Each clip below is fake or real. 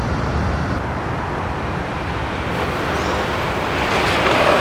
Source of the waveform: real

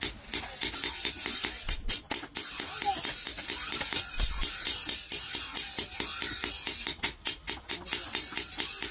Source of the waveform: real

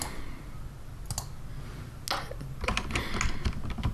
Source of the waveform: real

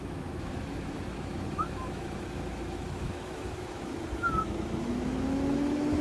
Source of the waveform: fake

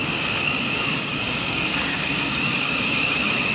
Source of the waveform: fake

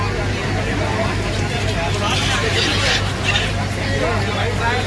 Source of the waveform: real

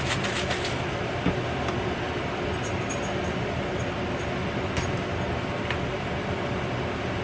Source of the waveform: real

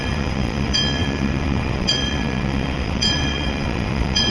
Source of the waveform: fake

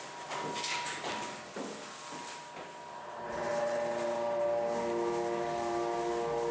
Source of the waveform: real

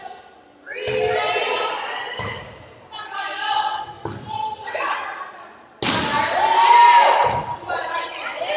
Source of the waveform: real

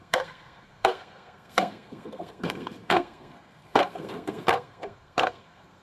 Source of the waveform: fake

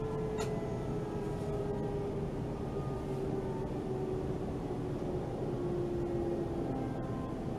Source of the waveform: real